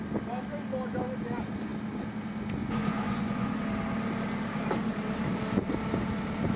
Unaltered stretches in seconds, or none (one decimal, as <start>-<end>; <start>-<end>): 0.0-2.6; 3.5-6.6